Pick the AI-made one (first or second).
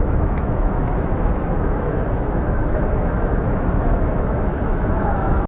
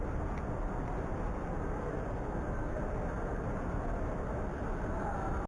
first